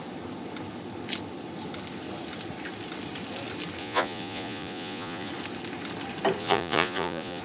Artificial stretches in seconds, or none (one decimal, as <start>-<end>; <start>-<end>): 3.8-5.3; 6.4-7.4